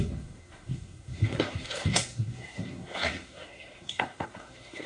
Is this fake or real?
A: fake